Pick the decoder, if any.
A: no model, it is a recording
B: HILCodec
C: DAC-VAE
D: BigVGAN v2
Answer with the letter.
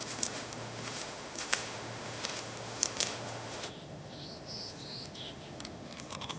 C